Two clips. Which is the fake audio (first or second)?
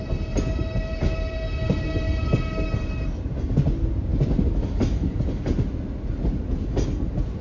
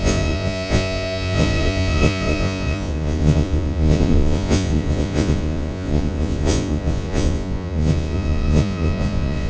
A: second